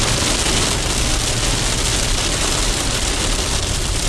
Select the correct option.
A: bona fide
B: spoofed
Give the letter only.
A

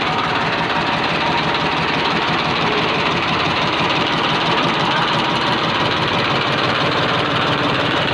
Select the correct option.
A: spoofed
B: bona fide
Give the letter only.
A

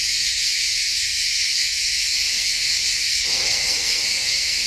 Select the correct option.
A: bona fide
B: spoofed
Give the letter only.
B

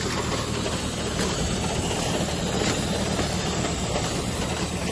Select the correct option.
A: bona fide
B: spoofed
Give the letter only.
A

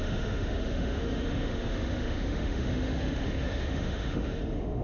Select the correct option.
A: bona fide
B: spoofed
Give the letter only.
B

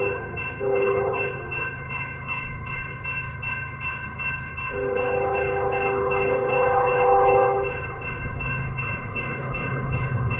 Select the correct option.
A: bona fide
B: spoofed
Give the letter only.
B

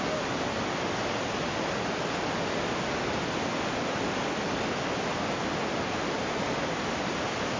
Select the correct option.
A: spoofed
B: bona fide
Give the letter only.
B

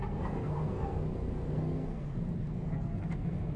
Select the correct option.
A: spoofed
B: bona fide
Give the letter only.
A